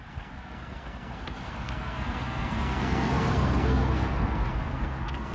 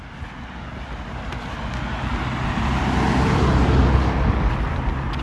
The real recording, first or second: second